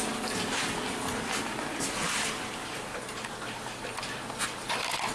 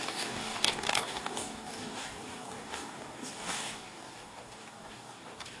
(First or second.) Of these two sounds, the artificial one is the second